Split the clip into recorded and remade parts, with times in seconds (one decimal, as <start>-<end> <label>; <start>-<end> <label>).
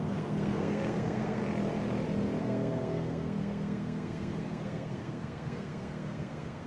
0.0-1.4 remade; 1.4-2.4 recorded; 2.4-6.7 remade